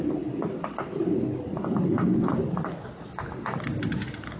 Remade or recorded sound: recorded